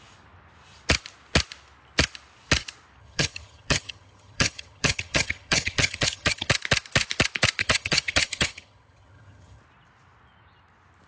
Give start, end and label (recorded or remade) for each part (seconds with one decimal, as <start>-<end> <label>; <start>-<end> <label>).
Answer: 0.0-3.0 recorded; 3.0-6.5 remade; 6.5-7.6 recorded; 7.6-9.6 remade; 9.6-11.1 recorded